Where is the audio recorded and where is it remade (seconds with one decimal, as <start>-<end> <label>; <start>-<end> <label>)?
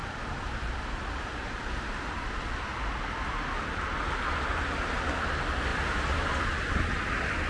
0.0-2.7 remade; 2.7-7.5 recorded